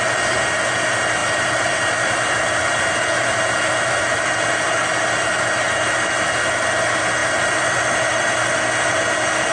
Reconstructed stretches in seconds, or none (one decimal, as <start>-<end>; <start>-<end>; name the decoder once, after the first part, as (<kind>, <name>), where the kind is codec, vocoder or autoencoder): 1.2-2.8 (vocoder, BigVGAN v2); 7.2-8.7